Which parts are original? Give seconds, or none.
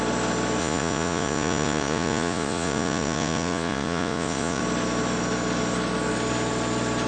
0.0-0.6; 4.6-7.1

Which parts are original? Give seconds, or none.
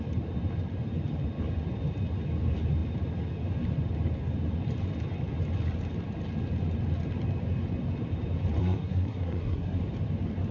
0.0-8.6; 9.8-10.5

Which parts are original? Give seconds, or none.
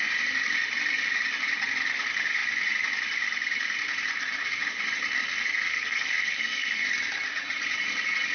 0.0-5.7; 6.8-8.3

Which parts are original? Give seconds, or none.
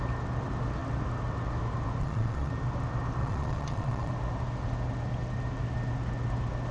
0.0-2.0; 2.5-3.2; 4.1-6.7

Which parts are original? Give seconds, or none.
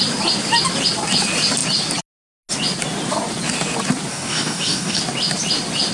0.0-4.1; 5.0-5.9